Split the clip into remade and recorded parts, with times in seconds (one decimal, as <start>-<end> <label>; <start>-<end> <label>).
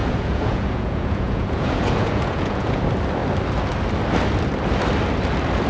0.0-2.8 remade; 2.8-5.7 recorded